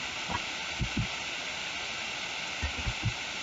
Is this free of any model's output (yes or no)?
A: yes